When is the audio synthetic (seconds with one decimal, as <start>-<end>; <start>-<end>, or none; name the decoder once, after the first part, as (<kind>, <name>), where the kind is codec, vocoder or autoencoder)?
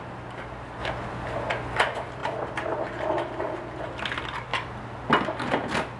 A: none